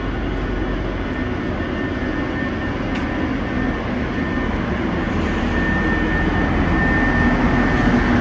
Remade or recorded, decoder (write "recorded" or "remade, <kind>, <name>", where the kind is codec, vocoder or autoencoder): recorded